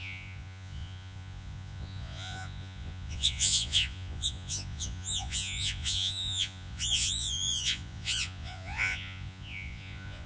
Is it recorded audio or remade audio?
remade